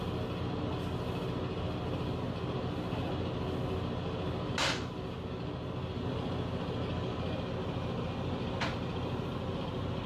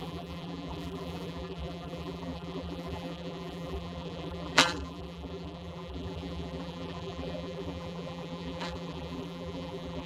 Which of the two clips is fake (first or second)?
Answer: second